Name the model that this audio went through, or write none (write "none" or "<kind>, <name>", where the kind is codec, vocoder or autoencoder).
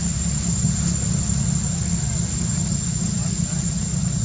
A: none